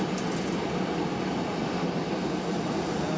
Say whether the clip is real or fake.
real